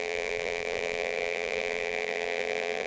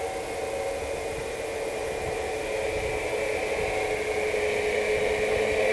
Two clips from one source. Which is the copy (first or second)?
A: first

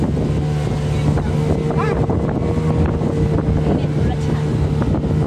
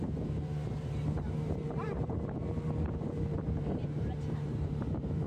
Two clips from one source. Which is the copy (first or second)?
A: second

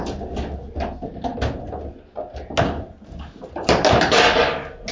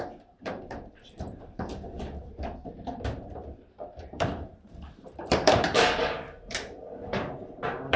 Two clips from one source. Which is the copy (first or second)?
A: second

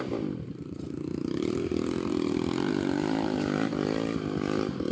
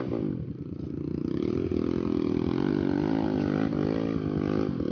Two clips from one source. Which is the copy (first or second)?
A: first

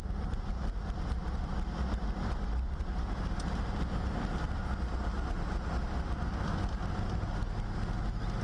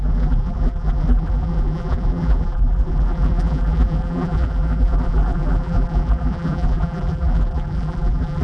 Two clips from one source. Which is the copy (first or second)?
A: second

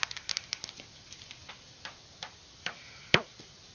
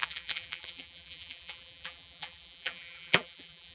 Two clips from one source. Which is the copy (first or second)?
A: second